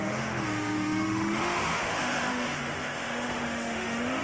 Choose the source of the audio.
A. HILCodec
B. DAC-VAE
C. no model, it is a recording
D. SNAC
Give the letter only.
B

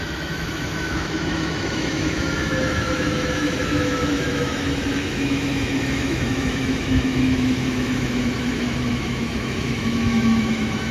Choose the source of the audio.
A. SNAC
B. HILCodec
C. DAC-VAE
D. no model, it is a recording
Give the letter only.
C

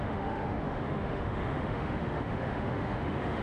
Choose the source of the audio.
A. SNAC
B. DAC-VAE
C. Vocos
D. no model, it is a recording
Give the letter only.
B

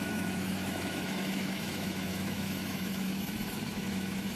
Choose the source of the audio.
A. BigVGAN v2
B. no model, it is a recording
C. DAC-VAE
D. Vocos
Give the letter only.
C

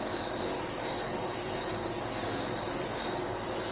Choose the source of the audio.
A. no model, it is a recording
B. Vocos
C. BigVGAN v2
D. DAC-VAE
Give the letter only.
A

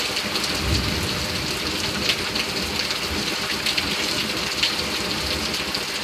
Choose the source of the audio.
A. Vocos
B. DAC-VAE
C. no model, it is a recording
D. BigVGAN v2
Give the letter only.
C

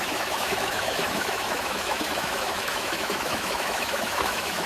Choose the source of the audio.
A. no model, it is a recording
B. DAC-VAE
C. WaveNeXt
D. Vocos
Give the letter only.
B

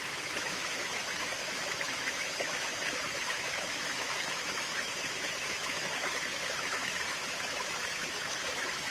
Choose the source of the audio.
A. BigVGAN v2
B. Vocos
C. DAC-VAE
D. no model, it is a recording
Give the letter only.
C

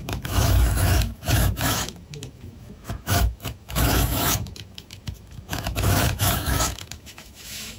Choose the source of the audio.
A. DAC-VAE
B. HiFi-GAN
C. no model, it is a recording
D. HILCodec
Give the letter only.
A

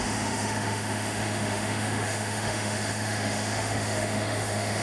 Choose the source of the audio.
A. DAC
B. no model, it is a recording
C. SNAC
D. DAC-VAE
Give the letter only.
D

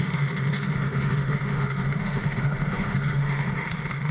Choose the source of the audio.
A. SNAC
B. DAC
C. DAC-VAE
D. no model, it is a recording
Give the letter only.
C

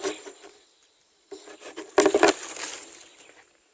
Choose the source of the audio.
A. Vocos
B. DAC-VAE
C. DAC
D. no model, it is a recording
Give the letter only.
D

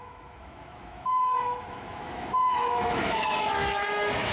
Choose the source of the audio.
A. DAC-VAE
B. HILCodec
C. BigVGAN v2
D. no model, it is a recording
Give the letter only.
A